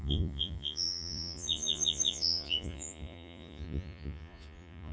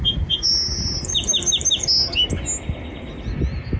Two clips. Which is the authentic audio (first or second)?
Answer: second